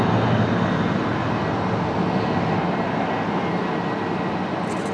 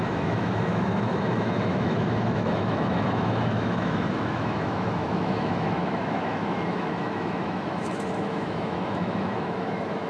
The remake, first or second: second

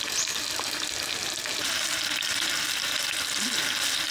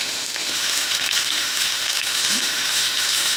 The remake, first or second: second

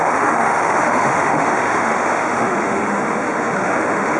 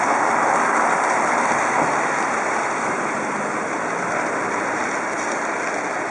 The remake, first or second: first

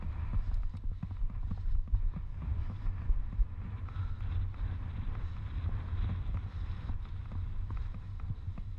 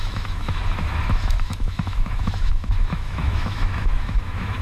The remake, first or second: second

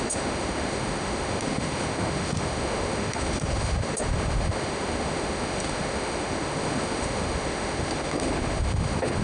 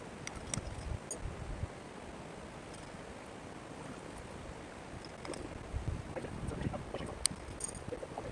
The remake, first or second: first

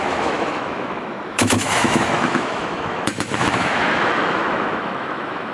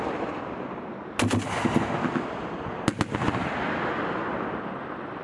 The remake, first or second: first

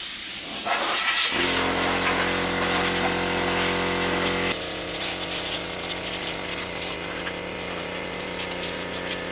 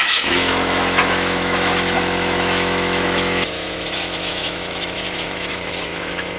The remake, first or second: second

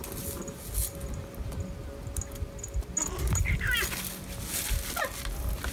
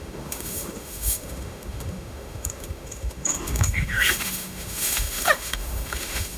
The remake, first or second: second